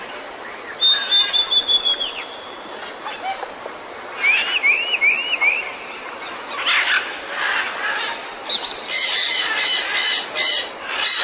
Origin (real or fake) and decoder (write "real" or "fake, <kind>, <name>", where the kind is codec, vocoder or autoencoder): real